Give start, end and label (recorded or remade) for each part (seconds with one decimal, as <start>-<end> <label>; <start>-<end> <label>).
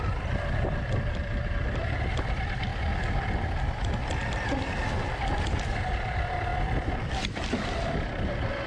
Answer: 0.0-8.7 recorded